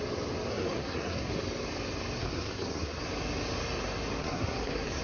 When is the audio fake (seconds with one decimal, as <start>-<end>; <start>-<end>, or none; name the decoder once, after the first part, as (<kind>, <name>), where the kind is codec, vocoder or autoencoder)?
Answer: 0.5-1.3 (codec, SNAC); 2.2-3.0; 4.2-5.0